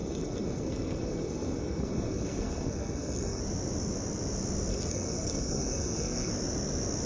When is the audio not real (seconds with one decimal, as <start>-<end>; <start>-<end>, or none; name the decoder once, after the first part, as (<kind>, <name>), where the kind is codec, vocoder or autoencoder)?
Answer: 0.0-3.4 (codec, SNAC); 4.7-6.3